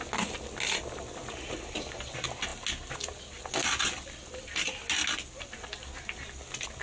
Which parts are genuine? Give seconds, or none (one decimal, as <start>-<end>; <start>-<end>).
0.0-6.8